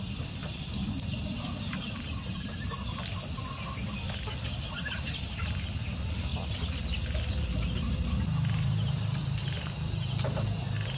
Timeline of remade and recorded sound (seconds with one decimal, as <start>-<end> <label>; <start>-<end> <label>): 0.0-0.4 recorded; 0.4-2.1 remade; 2.1-11.0 recorded